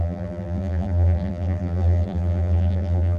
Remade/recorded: remade